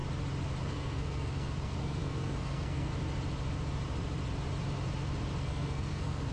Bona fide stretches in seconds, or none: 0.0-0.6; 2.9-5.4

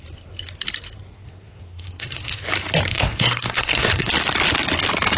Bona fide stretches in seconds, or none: 0.0-1.1; 2.4-2.9; 4.1-5.2